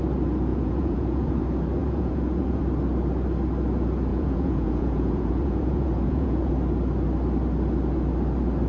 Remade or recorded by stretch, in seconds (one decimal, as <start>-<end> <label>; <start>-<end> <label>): 0.0-0.5 recorded; 0.5-1.4 remade; 1.4-1.8 recorded; 1.8-2.6 remade; 2.6-4.1 recorded; 4.1-6.5 remade; 6.5-8.7 recorded

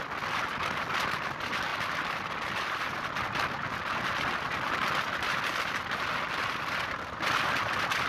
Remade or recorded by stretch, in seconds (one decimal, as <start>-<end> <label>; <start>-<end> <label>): 0.0-8.1 recorded

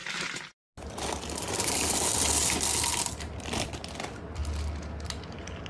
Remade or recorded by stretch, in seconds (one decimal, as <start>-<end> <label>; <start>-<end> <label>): 0.0-5.7 recorded

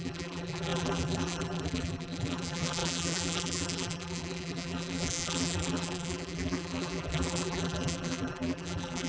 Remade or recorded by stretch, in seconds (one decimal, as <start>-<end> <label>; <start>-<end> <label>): 0.0-9.1 remade

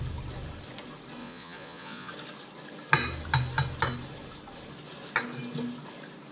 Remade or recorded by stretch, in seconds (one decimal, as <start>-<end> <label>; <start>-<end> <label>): 0.0-1.2 recorded; 1.2-2.1 remade; 2.1-6.3 recorded

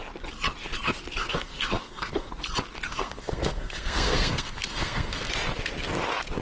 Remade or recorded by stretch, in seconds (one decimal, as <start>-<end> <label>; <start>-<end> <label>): 0.0-1.2 recorded; 1.2-2.3 remade; 2.3-2.9 recorded; 2.9-5.3 remade; 5.3-6.4 recorded

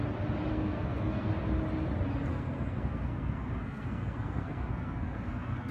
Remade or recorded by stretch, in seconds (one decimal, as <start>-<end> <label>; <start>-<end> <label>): 0.0-0.5 recorded; 0.5-1.3 remade; 1.3-2.3 recorded; 2.3-5.7 remade